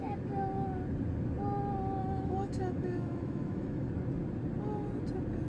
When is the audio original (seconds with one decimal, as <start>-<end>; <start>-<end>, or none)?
0.0-2.0; 3.9-5.5